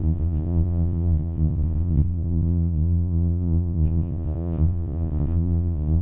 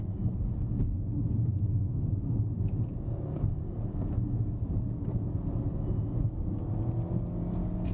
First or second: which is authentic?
second